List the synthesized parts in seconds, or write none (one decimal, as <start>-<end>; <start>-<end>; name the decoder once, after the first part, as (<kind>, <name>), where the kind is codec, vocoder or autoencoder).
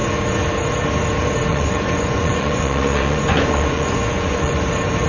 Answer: 1.5-4.6 (vocoder, Vocos)